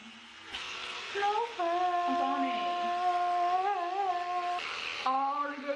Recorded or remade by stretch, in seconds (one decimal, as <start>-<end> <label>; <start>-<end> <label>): 0.0-1.1 remade; 1.1-5.8 recorded